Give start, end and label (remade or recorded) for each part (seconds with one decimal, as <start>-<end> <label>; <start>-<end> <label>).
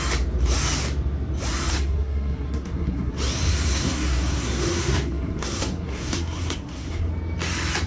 0.0-1.7 recorded; 1.7-3.1 remade; 3.1-3.5 recorded; 3.5-7.1 remade; 7.1-7.9 recorded